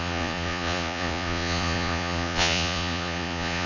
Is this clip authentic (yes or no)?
no